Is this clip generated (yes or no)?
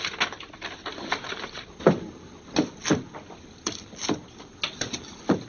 no